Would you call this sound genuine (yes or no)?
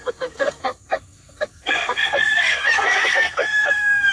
no